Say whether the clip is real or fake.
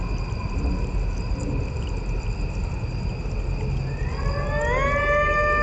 real